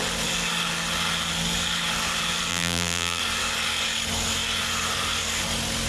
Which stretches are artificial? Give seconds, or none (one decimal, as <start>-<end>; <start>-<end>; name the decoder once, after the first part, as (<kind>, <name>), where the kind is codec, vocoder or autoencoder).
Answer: 2.5-3.2 (vocoder, BigVGAN v2)